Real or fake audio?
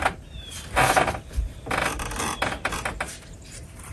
fake